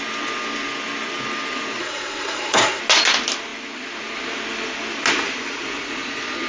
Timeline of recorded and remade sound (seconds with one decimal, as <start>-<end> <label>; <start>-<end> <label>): 0.0-1.8 recorded; 1.8-2.8 remade; 2.8-6.5 recorded